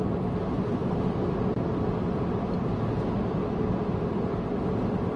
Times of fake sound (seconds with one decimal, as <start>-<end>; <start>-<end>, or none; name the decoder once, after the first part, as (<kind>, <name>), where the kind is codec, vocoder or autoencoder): none